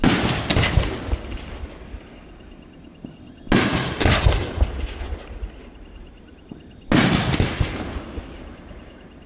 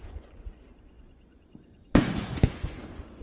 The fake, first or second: second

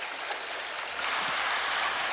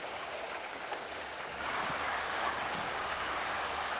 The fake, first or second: second